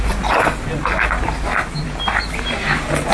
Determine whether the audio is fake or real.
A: real